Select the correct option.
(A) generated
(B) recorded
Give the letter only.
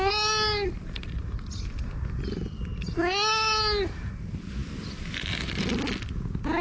B